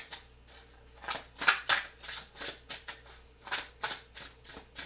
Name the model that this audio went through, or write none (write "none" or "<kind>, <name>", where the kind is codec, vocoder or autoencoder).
none